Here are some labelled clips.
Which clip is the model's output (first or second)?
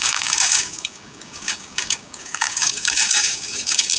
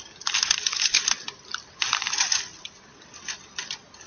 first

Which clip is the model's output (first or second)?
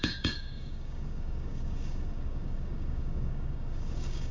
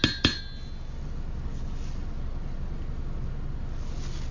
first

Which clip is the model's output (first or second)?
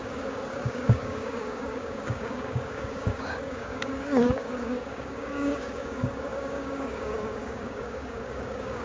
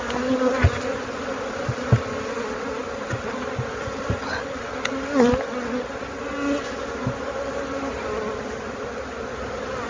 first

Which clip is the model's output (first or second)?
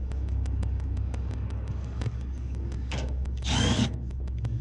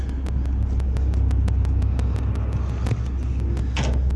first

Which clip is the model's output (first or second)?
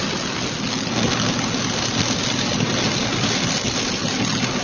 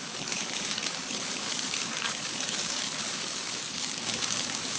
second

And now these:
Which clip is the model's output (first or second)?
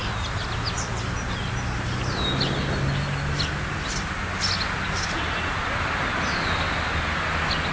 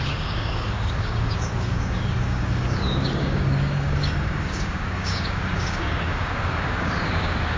second